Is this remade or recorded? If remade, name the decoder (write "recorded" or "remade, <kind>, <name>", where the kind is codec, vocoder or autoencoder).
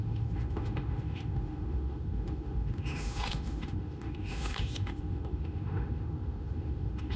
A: remade, autoencoder, DAC-VAE